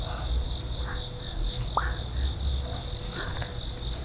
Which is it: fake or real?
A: real